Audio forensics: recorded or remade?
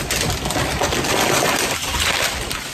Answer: remade